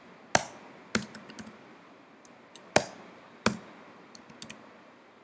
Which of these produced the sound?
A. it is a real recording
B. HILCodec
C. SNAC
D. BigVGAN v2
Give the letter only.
A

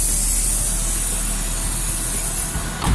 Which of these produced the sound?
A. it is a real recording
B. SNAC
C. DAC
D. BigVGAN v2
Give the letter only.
A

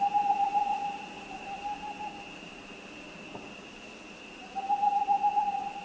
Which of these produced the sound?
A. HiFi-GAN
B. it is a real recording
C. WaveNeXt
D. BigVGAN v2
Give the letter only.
D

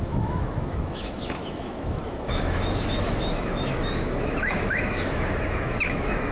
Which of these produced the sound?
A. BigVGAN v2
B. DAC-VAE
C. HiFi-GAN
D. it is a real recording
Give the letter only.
B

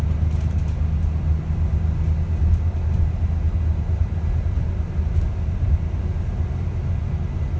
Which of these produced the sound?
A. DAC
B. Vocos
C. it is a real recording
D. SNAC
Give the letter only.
C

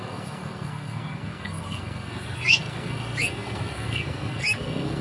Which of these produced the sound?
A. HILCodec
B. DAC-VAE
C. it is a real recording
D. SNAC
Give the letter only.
D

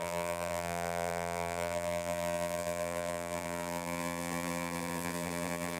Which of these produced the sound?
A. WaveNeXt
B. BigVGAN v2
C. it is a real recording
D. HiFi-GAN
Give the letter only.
B